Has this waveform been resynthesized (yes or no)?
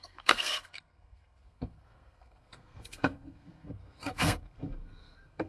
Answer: yes